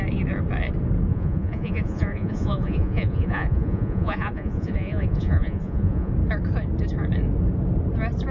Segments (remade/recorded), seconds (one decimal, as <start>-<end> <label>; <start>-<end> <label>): 0.0-1.1 recorded; 1.1-6.1 remade; 6.1-8.3 recorded